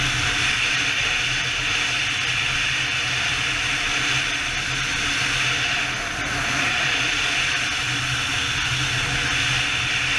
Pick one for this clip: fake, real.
real